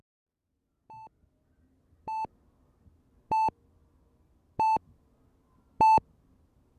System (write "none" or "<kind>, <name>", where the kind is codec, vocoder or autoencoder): none